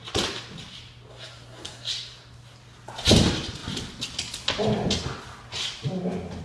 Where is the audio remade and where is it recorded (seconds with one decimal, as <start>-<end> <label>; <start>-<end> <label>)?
0.0-1.1 recorded; 1.1-1.9 remade; 1.9-6.4 recorded